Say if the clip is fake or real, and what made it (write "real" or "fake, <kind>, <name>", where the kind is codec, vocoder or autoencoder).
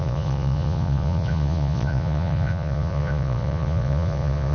fake, vocoder, Vocos